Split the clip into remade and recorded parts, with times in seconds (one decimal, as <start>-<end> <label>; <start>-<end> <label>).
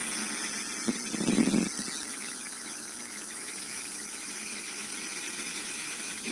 0.0-2.1 recorded; 2.1-4.9 remade; 4.9-5.5 recorded; 5.5-6.3 remade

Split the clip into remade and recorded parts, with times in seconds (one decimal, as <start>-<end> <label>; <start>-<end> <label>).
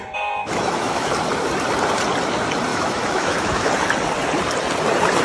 0.0-0.4 recorded; 0.4-1.1 remade; 1.1-2.7 recorded; 2.7-3.7 remade; 3.7-5.2 recorded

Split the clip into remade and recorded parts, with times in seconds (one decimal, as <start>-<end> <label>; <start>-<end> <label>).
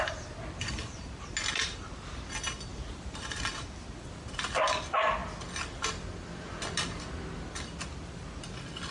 0.0-8.9 recorded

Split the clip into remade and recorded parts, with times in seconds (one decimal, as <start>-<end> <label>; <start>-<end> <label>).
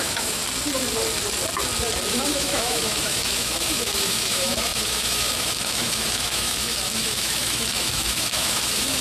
0.0-0.4 remade; 0.4-2.1 recorded; 2.1-9.0 remade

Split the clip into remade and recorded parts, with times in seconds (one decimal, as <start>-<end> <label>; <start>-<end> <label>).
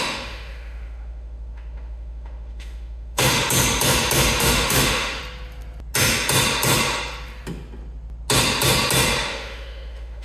0.0-3.4 remade; 3.4-4.4 recorded; 4.4-5.2 remade; 5.2-9.3 recorded; 9.3-10.2 remade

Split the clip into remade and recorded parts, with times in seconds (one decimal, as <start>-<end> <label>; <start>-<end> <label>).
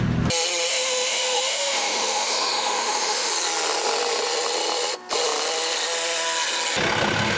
0.0-0.7 recorded; 0.7-3.3 remade; 3.3-7.4 recorded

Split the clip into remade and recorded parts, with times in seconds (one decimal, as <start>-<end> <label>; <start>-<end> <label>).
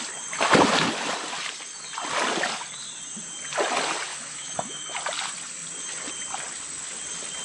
0.0-4.1 recorded; 4.1-5.0 remade; 5.0-7.4 recorded